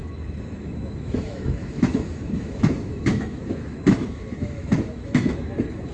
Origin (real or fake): fake